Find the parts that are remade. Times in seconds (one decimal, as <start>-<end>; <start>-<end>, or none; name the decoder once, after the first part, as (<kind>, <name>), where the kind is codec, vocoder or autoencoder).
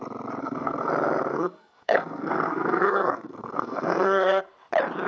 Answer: 0.4-0.9 (codec, SNAC); 1.3-4.4